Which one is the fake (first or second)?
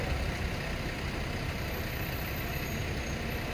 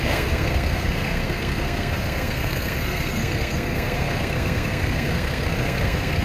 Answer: second